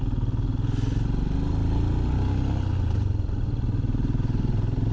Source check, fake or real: real